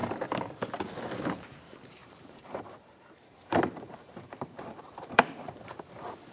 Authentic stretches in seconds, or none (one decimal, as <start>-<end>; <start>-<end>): 0.0-2.0; 5.8-6.3